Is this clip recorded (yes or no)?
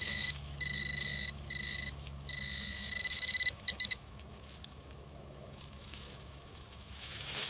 no